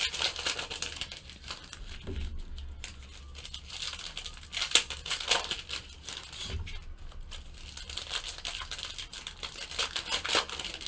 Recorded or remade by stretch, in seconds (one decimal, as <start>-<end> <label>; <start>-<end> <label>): 0.0-10.9 recorded